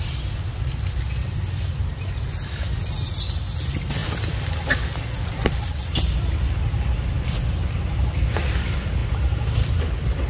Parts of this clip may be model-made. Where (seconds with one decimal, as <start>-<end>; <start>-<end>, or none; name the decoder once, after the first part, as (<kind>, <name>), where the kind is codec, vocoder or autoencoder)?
none